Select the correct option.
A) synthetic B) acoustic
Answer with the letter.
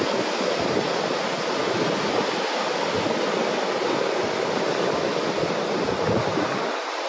B